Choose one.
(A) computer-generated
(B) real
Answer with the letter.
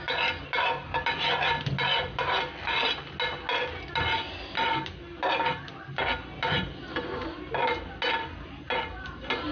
B